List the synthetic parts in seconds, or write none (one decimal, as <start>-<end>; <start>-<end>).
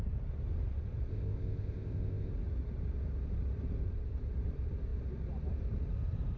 1.1-2.3